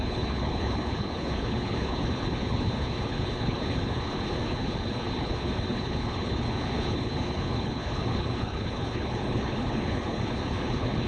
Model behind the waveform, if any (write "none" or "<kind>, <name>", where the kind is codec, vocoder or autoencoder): codec, HILCodec